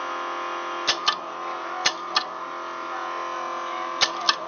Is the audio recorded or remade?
recorded